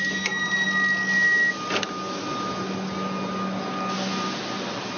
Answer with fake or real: real